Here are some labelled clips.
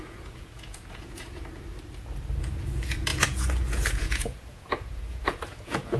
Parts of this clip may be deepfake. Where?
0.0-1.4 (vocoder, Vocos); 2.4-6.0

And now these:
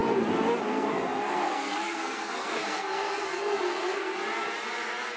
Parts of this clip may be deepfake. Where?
0.6-4.1 (codec, SNAC)

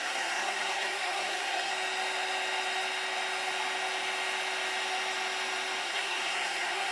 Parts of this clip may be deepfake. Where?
0.0-1.7 (codec, SNAC); 5.8-6.9

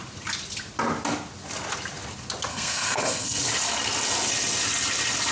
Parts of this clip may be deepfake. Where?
2.5-3.4 (codec, SNAC)

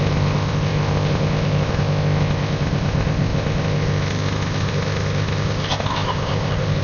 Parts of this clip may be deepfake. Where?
0.0-6.8 (codec, ZipCodec)

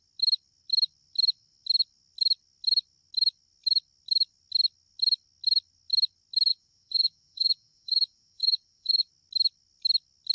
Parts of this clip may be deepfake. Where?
6.5-9.1 (vocoder, Vocos)